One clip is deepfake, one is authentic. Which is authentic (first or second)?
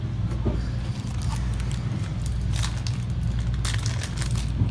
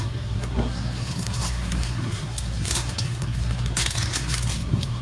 first